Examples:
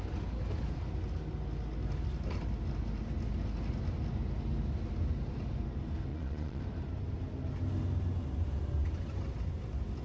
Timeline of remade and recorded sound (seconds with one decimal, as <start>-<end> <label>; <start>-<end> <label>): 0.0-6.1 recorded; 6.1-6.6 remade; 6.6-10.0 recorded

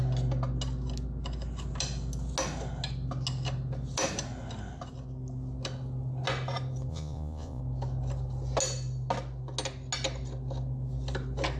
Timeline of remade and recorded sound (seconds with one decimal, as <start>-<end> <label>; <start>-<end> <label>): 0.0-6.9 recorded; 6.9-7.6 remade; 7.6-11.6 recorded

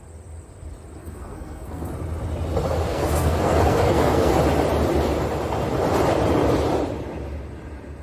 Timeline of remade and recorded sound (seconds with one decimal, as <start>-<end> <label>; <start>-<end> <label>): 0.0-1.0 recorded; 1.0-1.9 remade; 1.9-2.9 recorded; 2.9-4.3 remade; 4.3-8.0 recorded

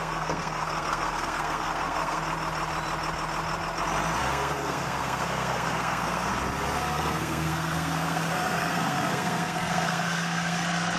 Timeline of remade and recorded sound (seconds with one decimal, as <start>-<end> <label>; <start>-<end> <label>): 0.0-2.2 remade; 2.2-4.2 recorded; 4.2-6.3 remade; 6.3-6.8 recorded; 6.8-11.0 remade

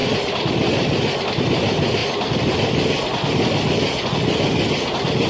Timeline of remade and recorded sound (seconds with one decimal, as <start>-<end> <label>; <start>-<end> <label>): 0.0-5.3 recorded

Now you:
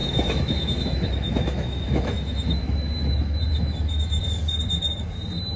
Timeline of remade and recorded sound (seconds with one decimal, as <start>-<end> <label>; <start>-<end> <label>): 0.0-3.1 remade; 3.1-3.5 recorded; 3.5-4.2 remade; 4.2-5.6 recorded